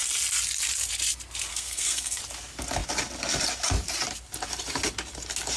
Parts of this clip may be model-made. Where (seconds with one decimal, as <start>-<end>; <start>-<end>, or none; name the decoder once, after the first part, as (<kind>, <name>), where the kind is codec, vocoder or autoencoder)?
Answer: 1.5-2.2 (codec, SNAC)